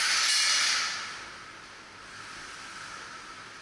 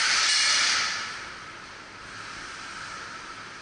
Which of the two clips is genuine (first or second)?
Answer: first